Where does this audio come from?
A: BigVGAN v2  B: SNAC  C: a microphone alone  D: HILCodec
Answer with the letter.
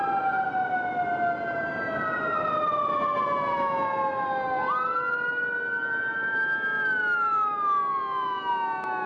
C